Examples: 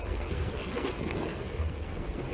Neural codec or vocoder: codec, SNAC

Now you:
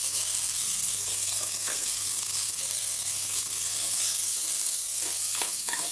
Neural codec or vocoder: codec, SNAC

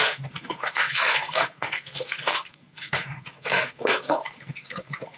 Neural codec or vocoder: codec, SNAC